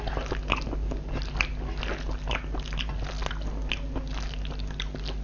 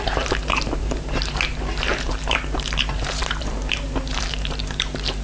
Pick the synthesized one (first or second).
second